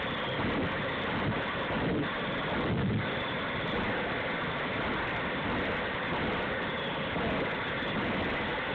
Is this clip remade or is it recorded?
recorded